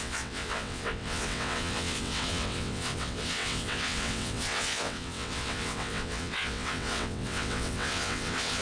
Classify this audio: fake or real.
fake